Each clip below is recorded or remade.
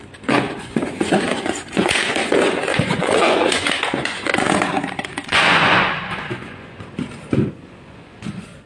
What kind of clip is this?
remade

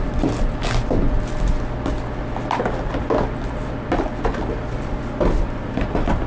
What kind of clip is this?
recorded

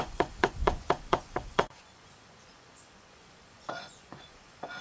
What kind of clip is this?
remade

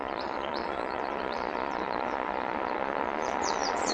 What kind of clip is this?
remade